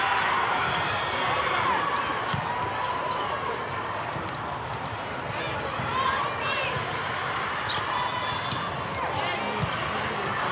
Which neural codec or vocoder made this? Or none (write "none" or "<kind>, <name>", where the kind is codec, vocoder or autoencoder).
none